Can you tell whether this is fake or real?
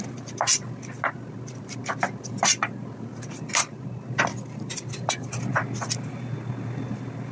real